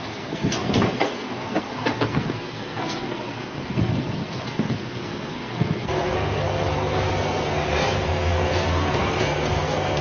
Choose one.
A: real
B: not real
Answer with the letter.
B